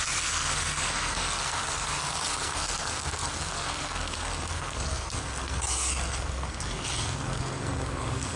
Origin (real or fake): fake